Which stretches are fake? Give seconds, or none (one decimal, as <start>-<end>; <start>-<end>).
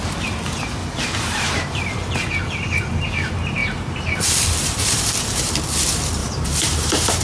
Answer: 0.8-1.8; 3.6-5.5; 6.2-7.2